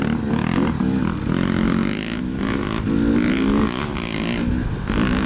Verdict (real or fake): real